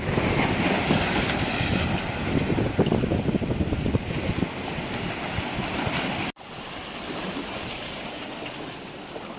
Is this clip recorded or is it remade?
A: recorded